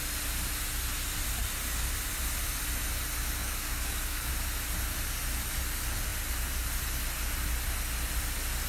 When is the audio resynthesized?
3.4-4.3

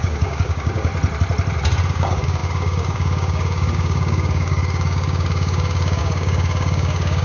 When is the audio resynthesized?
0.0-0.9; 1.9-7.2

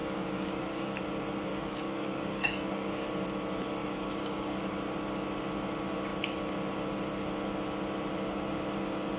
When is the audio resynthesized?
0.0-1.0; 1.5-3.1; 3.8-4.6

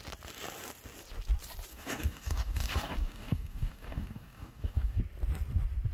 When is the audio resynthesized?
1.7-5.0

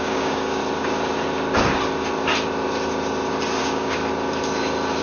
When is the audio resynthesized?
0.0-0.6; 3.6-4.0

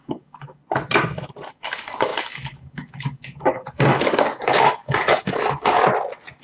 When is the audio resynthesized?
0.0-0.6; 1.5-5.8